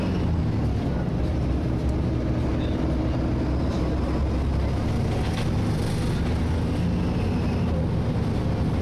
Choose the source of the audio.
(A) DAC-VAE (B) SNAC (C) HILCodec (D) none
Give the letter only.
D